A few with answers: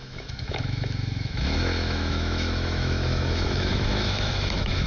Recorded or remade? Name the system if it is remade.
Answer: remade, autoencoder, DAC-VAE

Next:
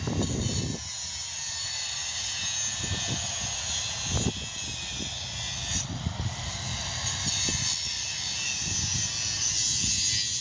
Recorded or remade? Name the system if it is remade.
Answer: recorded